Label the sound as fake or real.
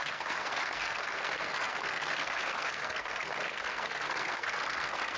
fake